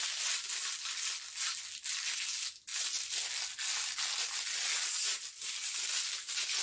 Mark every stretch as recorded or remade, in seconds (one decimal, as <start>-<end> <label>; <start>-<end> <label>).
0.0-6.6 recorded